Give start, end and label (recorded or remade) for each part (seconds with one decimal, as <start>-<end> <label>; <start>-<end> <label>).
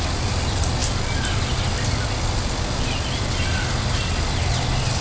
0.0-5.0 recorded